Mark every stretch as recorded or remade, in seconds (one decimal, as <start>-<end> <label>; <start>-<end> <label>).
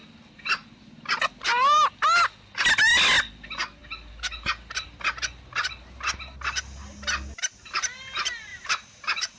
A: 0.0-8.5 recorded; 8.5-9.4 remade